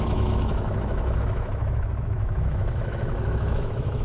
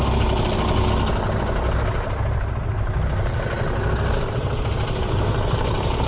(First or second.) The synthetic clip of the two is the first